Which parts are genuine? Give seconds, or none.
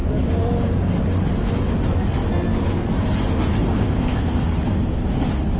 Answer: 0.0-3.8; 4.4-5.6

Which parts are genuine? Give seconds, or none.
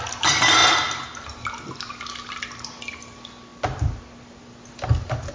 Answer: 0.0-5.3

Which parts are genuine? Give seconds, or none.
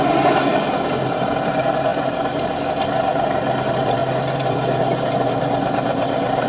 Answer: 0.5-1.1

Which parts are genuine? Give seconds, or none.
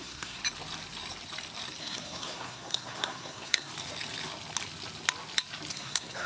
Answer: 0.4-1.8; 3.7-5.7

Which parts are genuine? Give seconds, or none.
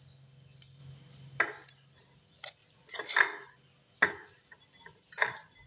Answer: 0.0-5.7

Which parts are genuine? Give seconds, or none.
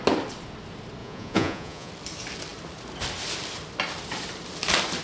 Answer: 0.0-1.0; 1.9-5.0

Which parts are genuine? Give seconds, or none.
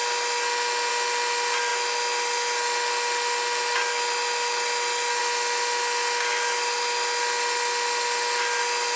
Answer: 0.0-9.0